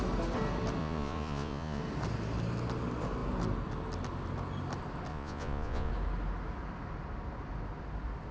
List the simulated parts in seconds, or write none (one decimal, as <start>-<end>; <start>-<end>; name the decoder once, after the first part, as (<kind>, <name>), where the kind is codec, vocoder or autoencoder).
0.8-1.8 (vocoder, Vocos); 5.1-5.9